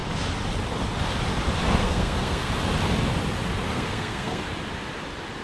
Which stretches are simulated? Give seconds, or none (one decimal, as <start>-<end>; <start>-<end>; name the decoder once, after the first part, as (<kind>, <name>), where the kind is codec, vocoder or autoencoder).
1.8-2.5 (codec, SNAC); 3.7-4.4